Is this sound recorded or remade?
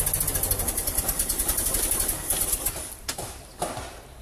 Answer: recorded